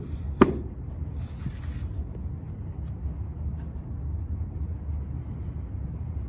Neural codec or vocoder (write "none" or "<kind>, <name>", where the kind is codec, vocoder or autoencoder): none